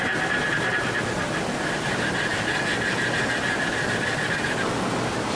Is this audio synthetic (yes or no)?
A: no